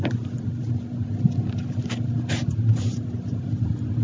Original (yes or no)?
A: yes